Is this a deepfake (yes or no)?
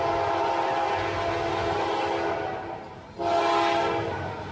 no